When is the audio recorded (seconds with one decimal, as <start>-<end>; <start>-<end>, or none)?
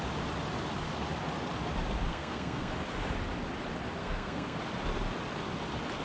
0.0-2.1; 2.7-4.0; 4.6-6.0